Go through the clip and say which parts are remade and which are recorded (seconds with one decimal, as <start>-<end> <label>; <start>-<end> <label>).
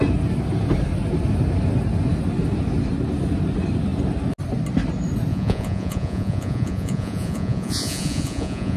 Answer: 0.0-5.3 recorded; 5.3-8.8 remade